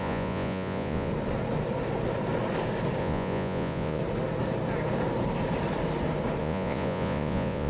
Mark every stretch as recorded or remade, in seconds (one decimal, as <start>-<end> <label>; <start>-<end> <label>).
0.0-1.1 remade; 1.1-3.0 recorded; 3.0-4.0 remade; 4.0-6.4 recorded; 6.4-7.7 remade

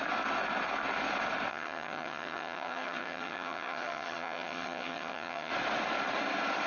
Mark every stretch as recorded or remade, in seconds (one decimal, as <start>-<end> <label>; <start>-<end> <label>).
0.0-1.5 recorded; 1.5-5.5 remade; 5.5-6.7 recorded

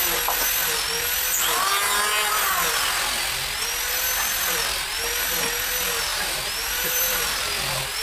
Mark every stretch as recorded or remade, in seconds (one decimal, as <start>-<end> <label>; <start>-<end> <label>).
0.0-6.1 recorded; 6.1-7.0 remade; 7.0-8.0 recorded

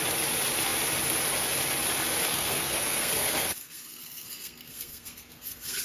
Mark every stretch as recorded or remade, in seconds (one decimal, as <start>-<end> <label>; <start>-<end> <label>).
0.0-2.3 recorded; 2.3-5.8 remade

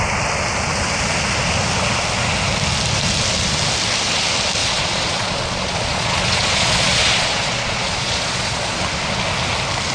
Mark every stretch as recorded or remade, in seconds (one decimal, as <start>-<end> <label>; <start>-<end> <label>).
0.0-4.6 recorded; 4.6-8.9 remade; 8.9-9.9 recorded

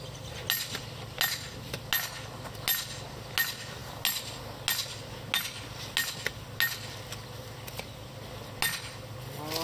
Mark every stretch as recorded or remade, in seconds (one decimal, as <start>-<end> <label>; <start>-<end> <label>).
0.0-9.6 recorded